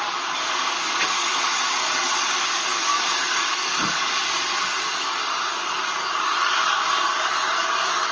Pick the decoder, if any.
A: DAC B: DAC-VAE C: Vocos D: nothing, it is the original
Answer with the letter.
A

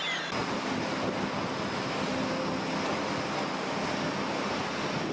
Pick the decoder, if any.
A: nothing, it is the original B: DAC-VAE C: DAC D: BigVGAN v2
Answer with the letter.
A